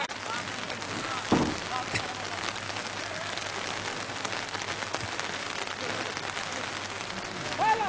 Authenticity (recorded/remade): recorded